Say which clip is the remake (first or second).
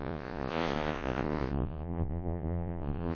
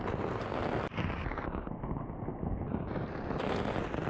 first